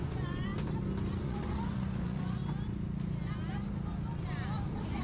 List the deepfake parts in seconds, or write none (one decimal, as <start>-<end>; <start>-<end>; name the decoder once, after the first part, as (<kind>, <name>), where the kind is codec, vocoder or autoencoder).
0.0-0.5 (vocoder, Vocos); 1.2-2.4